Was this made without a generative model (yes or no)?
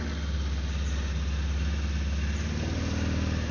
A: yes